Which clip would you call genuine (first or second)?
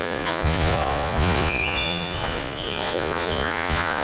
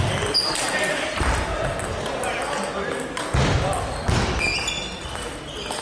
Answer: second